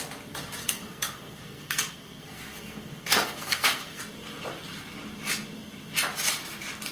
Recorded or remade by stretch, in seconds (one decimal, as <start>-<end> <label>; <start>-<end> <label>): 0.0-0.6 recorded; 0.6-4.0 remade; 4.0-6.9 recorded

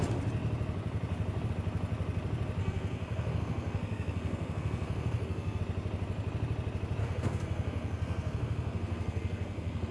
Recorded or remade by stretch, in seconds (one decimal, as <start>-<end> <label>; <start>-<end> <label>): 0.0-2.6 recorded; 2.6-5.6 remade; 5.6-7.0 recorded; 7.0-9.9 remade

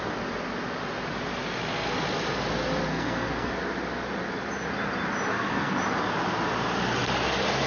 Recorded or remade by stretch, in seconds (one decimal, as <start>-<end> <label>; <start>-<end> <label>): 0.0-2.9 recorded; 2.9-3.5 remade; 3.5-5.3 recorded; 5.3-5.8 remade; 5.8-7.7 recorded

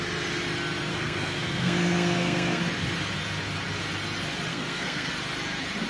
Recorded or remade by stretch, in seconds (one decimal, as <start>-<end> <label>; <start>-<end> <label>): 0.0-0.9 recorded; 0.9-2.6 remade; 2.6-4.5 recorded; 4.5-5.1 remade; 5.1-5.9 recorded

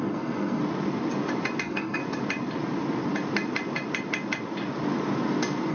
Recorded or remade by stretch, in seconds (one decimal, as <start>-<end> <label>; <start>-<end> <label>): 0.0-0.6 remade; 0.6-1.6 recorded; 1.6-2.0 remade; 2.0-5.7 recorded

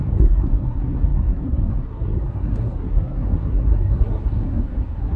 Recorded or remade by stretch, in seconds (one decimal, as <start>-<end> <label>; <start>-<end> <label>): 0.0-5.2 remade

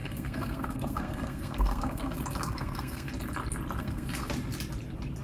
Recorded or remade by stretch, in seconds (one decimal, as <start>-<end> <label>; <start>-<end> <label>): 0.0-3.1 remade; 3.1-3.8 recorded; 3.8-4.3 remade; 4.3-5.2 recorded